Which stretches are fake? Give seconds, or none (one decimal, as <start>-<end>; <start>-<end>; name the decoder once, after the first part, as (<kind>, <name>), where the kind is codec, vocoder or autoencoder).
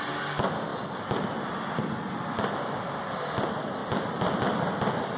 none